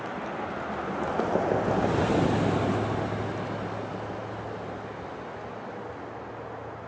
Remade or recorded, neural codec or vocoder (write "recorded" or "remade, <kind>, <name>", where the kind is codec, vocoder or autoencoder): recorded